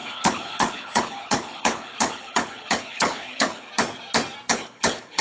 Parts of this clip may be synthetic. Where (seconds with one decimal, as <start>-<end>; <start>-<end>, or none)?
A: 0.0-3.7; 4.5-5.2